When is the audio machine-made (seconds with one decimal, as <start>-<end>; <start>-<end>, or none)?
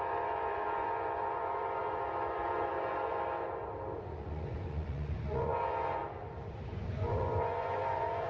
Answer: 0.0-3.1; 4.0-6.0; 6.7-8.3